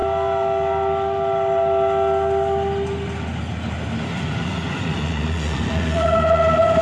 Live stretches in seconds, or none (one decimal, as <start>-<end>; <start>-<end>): 0.0-4.1